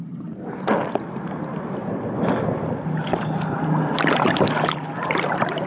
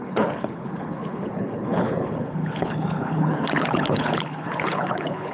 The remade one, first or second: second